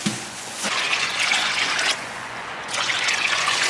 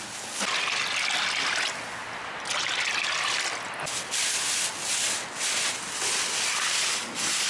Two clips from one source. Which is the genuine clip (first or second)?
second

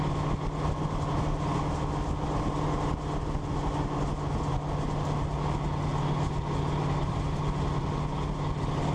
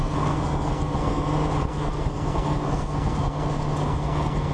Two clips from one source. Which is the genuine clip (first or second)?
first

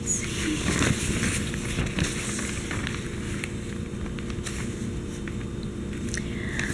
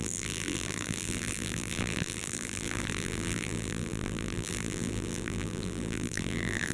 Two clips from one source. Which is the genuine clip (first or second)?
first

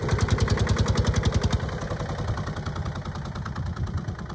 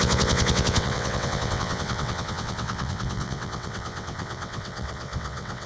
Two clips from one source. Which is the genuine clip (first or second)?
first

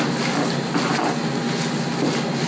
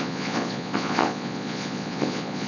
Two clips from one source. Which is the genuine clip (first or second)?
first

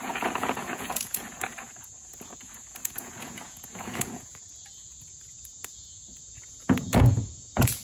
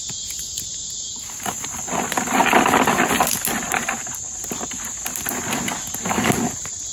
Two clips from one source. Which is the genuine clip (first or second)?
second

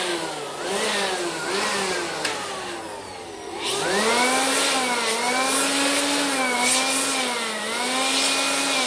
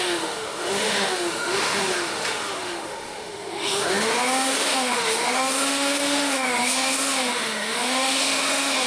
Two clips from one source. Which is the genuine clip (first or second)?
first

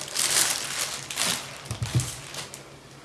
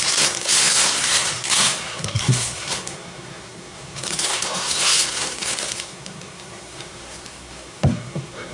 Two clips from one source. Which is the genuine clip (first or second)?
first